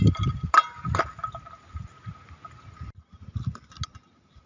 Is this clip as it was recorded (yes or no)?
yes